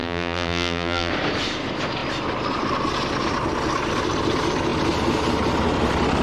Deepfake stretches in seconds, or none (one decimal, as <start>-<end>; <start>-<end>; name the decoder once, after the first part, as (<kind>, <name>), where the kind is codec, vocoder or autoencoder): 0.0-1.1 (vocoder, BigVGAN v2)